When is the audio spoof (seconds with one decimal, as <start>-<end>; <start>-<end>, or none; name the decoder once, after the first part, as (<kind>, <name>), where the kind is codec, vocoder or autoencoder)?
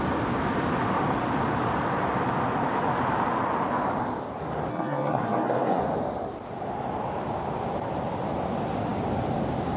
4.7-5.8 (codec, SNAC)